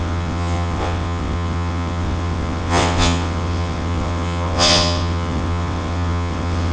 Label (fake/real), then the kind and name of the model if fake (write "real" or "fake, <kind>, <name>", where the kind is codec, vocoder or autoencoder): fake, vocoder, WaveNeXt